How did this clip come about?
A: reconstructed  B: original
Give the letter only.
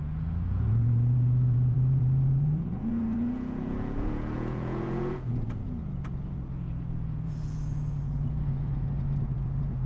A